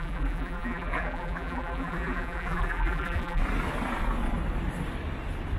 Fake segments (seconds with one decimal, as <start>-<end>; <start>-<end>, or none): 0.0-3.4

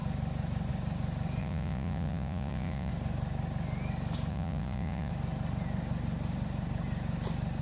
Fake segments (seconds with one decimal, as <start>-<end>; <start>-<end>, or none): 1.4-2.9; 4.3-5.1

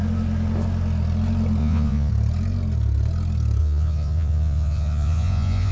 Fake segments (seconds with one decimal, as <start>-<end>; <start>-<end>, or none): 1.6-2.1; 3.6-5.7

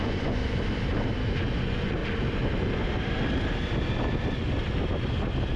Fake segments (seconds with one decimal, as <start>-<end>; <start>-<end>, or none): 0.0-0.4; 1.4-2.0

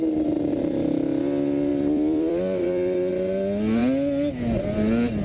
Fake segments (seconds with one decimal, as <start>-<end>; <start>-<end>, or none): 1.7-3.1

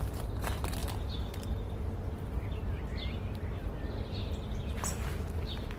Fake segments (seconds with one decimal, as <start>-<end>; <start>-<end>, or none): none

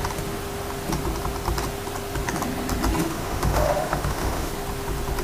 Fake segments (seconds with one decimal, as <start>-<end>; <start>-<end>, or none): 3.0-4.5

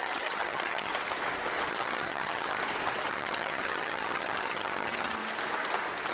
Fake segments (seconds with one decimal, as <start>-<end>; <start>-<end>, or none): 0.0-0.9; 1.7-2.6; 3.1-5.2